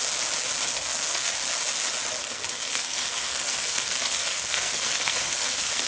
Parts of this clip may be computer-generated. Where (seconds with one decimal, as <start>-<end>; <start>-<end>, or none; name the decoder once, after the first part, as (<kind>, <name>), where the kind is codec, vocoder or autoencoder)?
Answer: 0.7-1.3 (codec, SNAC); 2.2-5.9